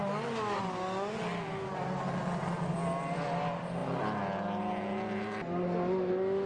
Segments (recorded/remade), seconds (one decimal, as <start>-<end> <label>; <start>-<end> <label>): 0.0-1.3 recorded; 1.3-2.2 remade; 2.2-6.5 recorded